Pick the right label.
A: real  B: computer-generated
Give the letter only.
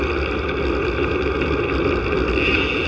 A